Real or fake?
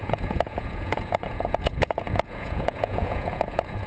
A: fake